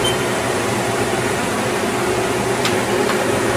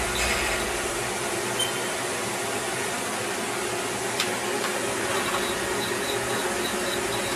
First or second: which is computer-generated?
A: first